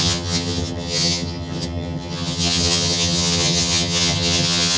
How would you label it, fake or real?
fake